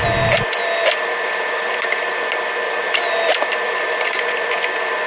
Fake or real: real